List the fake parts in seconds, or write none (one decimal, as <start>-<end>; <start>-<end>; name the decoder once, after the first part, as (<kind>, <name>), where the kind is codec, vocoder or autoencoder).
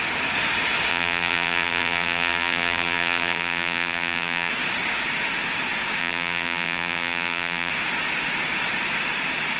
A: 0.9-4.5 (vocoder, BigVGAN v2); 6.0-7.7